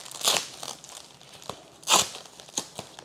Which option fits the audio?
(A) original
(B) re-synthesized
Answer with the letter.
A